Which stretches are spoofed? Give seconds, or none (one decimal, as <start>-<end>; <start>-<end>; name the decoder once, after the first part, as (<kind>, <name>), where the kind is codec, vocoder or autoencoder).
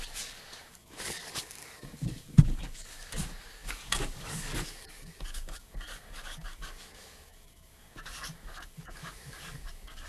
0.0-10.1 (codec, DAC)